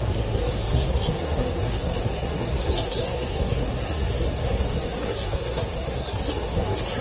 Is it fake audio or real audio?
fake